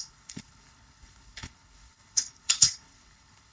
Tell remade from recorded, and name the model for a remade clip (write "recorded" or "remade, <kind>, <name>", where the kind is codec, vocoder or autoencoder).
remade, codec, HILCodec